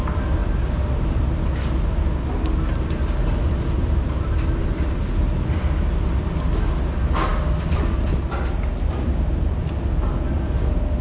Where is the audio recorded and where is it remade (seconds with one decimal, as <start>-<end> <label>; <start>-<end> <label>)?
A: 0.0-11.0 recorded

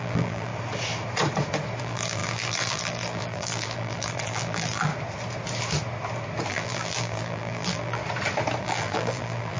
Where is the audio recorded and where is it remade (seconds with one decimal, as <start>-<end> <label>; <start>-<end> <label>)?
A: 0.0-0.5 remade; 0.5-1.8 recorded; 1.8-4.9 remade; 4.9-6.5 recorded; 6.5-8.0 remade; 8.0-8.6 recorded; 8.6-9.6 remade

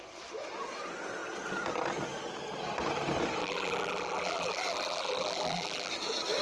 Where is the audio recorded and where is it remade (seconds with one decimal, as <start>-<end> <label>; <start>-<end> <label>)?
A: 0.0-3.4 recorded; 3.4-5.9 remade; 5.9-6.4 recorded

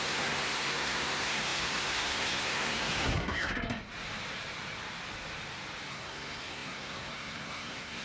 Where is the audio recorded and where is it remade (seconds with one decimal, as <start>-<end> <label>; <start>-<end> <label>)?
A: 0.0-3.9 remade; 3.9-5.9 recorded; 5.9-8.0 remade

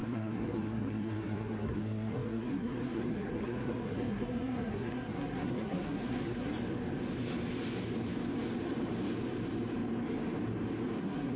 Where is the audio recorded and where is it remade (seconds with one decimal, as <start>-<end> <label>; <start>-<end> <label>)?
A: 0.0-6.5 remade; 6.5-11.0 recorded; 11.0-11.4 remade

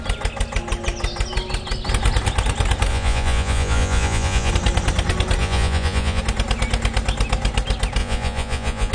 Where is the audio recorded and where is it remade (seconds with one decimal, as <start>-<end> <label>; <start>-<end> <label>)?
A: 0.0-2.9 recorded; 2.9-4.5 remade; 4.5-5.4 recorded; 5.4-6.2 remade; 6.2-8.0 recorded; 8.0-8.9 remade